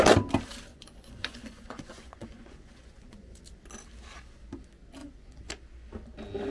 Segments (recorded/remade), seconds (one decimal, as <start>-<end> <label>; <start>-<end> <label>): 0.0-0.7 recorded; 0.7-3.4 remade; 3.4-5.0 recorded; 5.0-5.5 remade; 5.5-6.5 recorded